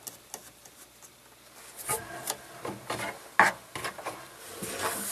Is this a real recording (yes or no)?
yes